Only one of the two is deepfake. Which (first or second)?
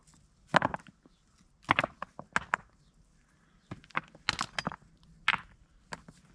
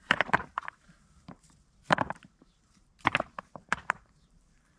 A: second